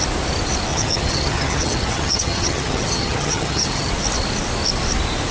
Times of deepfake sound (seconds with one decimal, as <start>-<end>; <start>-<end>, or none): 0.7-3.9